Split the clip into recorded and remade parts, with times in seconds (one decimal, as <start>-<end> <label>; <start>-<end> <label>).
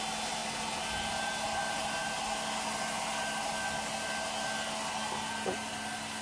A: 0.0-6.2 recorded